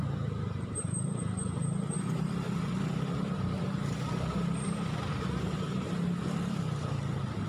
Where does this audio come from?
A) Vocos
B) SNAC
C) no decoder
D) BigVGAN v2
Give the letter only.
D